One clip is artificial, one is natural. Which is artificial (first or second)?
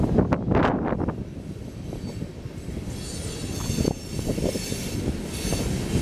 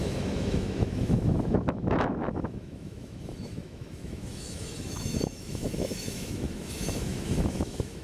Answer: second